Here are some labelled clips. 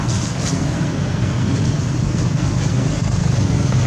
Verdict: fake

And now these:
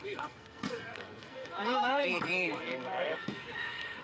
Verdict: fake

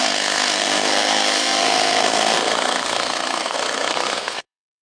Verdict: fake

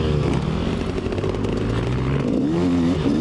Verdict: real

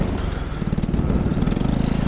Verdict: real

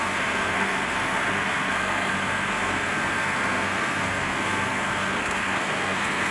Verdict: fake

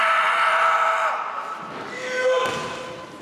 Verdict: real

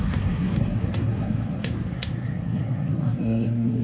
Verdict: fake